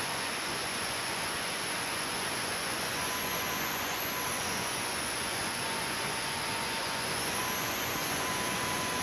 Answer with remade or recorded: remade